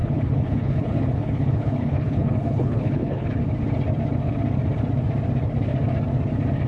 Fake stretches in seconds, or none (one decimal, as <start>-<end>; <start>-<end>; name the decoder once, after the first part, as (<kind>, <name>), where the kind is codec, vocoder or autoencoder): 0.0-3.4 (codec, HILCodec)